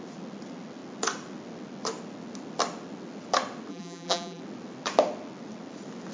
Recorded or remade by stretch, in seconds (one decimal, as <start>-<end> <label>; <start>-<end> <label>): 0.0-3.7 recorded; 3.7-4.4 remade; 4.4-6.1 recorded